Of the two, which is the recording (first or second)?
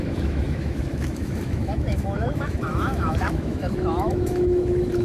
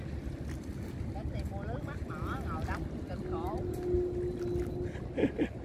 second